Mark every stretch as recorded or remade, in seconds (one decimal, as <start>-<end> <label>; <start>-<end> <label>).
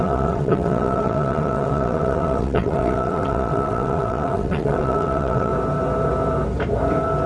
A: 0.0-5.5 remade; 5.5-7.3 recorded